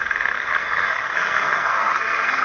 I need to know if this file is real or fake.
fake